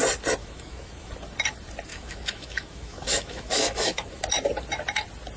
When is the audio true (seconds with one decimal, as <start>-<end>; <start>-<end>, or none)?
0.0-0.4; 1.1-1.9; 4.2-5.4